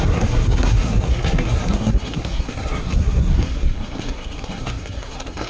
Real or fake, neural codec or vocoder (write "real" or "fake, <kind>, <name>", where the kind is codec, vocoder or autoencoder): fake, codec, SNAC